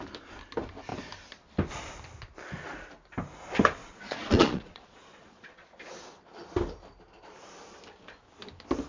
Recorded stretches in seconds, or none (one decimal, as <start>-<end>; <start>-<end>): 0.0-3.8; 5.8-8.9